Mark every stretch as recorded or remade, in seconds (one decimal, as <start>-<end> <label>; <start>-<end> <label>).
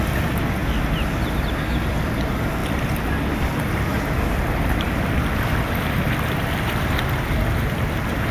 0.0-8.3 recorded